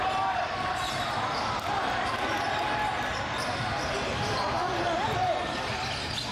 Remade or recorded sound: remade